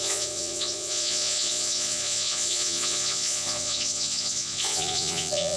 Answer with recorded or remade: remade